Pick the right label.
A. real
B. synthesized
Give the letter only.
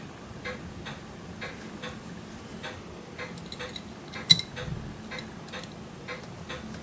A